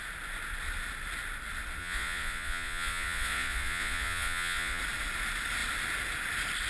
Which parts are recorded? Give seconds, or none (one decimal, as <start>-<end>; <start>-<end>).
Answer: 0.0-1.8; 4.8-6.7